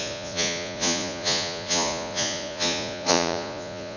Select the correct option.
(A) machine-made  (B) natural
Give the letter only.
A